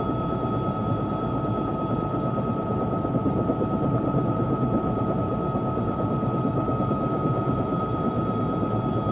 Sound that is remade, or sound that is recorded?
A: remade